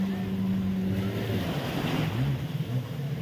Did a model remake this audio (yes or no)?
no